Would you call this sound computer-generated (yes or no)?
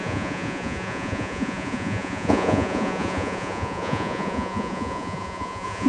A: yes